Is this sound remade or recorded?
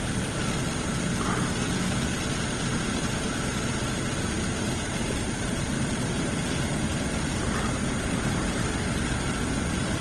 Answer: recorded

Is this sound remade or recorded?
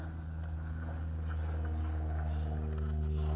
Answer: recorded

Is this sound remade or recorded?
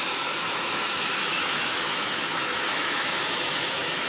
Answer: remade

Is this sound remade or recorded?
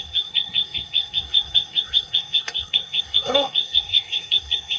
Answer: remade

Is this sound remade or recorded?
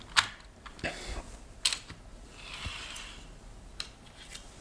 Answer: recorded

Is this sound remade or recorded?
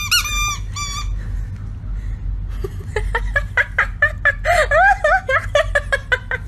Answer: recorded